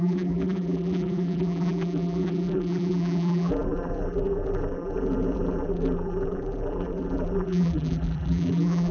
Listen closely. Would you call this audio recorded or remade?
remade